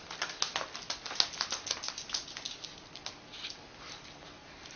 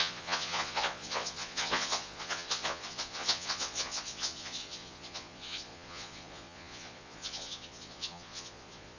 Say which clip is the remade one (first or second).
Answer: second